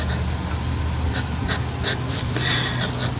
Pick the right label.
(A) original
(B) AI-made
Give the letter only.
A